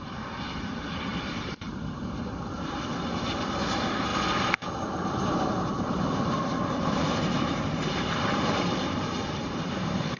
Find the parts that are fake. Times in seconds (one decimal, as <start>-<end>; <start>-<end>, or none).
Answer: 0.0-4.1; 5.7-10.2